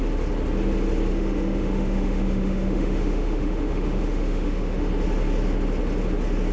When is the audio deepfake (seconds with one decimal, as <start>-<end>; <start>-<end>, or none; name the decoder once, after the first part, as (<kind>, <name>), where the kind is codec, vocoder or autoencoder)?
1.1-4.9 (autoencoder, DAC-VAE)